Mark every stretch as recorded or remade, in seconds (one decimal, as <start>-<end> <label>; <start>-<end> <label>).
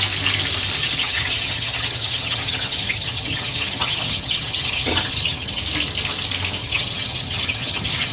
0.0-0.8 recorded; 0.8-5.6 remade; 5.6-6.6 recorded; 6.6-8.1 remade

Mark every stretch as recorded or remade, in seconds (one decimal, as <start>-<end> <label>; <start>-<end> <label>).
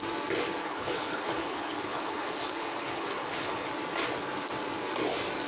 0.0-0.6 recorded; 0.6-3.7 remade; 3.7-5.5 recorded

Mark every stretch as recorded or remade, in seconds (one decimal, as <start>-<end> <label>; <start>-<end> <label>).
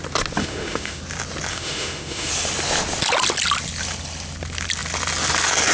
0.0-0.4 recorded; 0.4-1.0 remade; 1.0-1.5 recorded; 1.5-2.3 remade; 2.3-5.7 recorded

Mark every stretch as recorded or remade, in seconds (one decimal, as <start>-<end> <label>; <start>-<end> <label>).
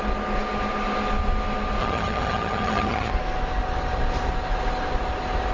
0.0-1.8 recorded; 1.8-3.1 remade; 3.1-5.5 recorded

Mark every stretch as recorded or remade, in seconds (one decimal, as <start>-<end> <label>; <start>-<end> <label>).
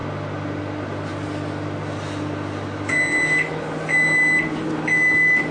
0.0-5.5 recorded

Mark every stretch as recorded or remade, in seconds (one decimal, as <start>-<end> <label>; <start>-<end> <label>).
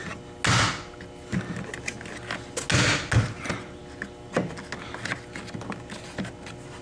0.0-6.8 recorded